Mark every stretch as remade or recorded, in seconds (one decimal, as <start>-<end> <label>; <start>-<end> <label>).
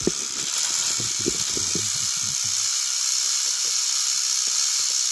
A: 0.0-5.1 recorded